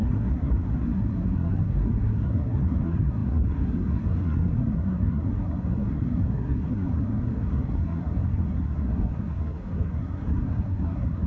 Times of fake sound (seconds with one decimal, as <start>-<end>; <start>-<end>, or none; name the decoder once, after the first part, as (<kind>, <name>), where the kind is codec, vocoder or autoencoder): 0.0-11.3 (codec, SNAC)